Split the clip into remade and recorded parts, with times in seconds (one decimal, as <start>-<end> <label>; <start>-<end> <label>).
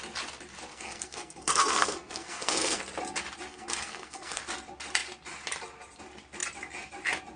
0.0-0.7 recorded; 0.7-2.8 remade; 2.8-3.5 recorded; 3.5-4.4 remade; 4.4-7.4 recorded